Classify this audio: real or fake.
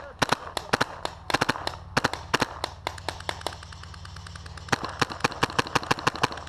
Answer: real